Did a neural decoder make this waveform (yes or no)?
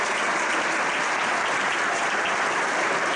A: no